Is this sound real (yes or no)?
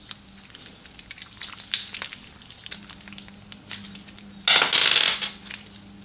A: yes